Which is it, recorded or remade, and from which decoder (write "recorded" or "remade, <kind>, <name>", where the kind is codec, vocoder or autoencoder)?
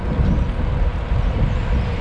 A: recorded